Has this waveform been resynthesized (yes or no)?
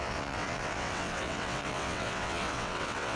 yes